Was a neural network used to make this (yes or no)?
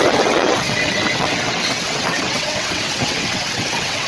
yes